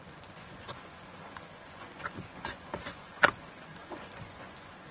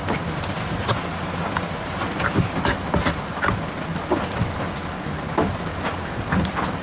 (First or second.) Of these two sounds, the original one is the second